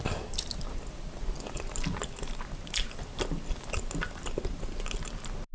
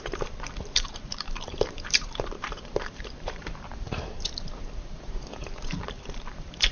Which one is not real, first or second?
second